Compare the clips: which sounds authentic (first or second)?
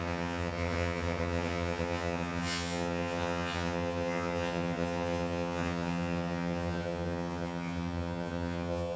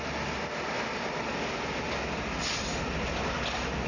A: second